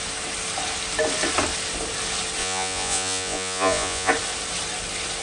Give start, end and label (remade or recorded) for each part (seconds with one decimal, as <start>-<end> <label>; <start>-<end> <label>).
0.0-2.4 recorded; 2.4-4.1 remade; 4.1-5.2 recorded